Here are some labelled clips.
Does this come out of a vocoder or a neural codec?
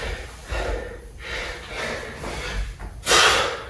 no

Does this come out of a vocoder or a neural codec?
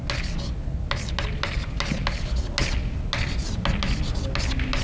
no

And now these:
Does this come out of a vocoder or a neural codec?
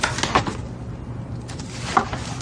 no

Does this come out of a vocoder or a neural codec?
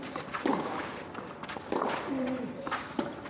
yes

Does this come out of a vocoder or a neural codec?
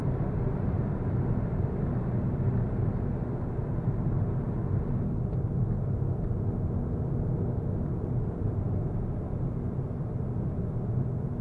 no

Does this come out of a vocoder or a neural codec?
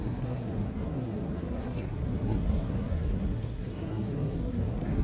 yes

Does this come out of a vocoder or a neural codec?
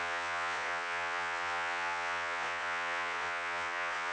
yes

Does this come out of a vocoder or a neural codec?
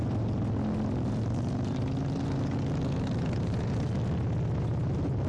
no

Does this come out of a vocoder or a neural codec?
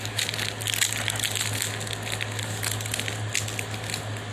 no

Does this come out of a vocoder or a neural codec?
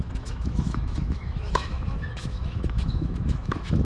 yes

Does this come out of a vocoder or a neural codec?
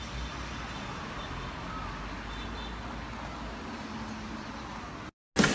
no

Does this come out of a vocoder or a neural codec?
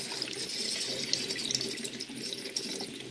no